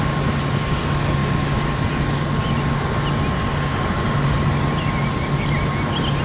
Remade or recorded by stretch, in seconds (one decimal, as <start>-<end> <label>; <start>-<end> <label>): 0.0-6.2 recorded